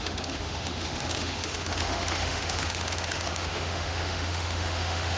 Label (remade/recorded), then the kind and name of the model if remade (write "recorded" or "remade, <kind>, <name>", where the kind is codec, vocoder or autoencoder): remade, autoencoder, DAC-VAE